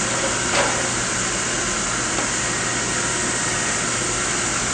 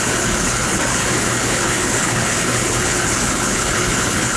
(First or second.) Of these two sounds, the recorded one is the first